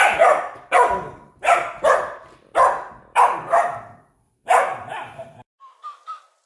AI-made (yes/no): yes